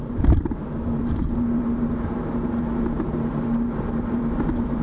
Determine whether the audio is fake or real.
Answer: fake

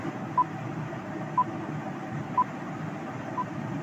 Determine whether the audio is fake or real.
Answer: real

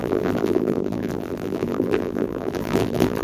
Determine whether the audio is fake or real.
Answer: fake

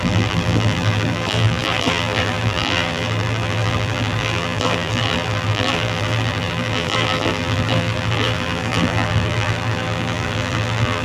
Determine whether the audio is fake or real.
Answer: fake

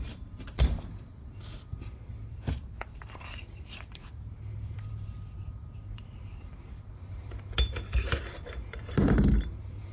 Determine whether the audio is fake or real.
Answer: fake